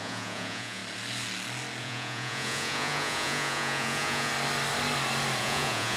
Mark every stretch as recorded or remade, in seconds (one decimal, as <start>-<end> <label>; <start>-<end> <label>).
0.0-0.8 remade; 0.8-1.8 recorded; 1.8-4.3 remade; 4.3-5.4 recorded; 5.4-6.0 remade